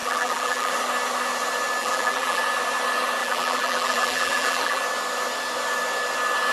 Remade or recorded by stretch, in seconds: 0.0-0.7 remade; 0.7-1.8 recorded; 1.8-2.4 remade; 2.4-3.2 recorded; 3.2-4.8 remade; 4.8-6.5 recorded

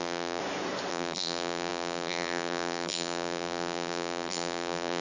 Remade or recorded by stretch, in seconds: 0.0-0.4 remade; 0.4-0.9 recorded; 0.9-5.0 remade

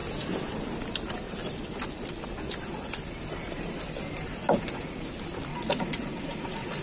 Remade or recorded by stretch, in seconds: 0.0-5.5 recorded; 5.5-6.8 remade